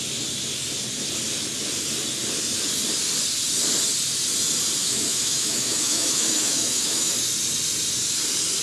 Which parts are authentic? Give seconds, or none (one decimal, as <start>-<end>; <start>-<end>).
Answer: 0.0-4.8; 7.1-8.6

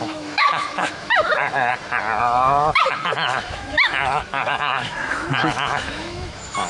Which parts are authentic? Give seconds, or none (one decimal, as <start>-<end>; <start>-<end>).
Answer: 1.7-2.2

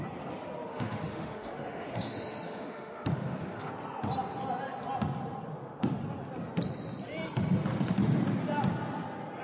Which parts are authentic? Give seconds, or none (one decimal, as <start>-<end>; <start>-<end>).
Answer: 0.0-0.7; 3.7-5.5; 6.0-9.4

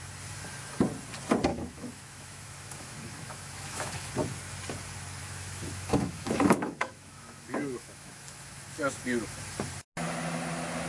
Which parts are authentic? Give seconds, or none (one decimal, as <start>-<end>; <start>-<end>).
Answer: 0.0-1.5; 4.1-5.2; 9.4-10.9

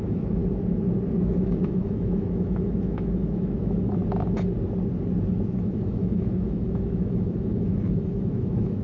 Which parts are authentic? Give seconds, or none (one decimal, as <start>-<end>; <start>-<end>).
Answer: 0.4-1.1; 4.0-5.5